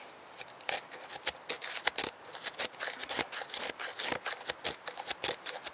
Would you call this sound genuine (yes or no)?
yes